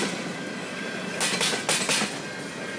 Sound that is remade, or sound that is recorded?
recorded